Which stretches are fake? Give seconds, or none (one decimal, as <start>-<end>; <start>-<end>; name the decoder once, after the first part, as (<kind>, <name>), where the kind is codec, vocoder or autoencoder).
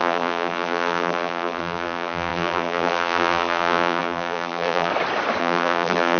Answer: 0.0-4.9 (vocoder, BigVGAN v2); 5.4-6.2